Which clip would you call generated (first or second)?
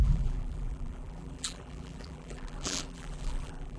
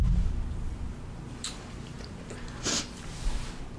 first